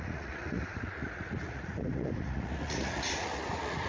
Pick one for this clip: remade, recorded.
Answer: remade